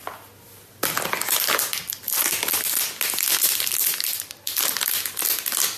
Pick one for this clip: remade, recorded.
recorded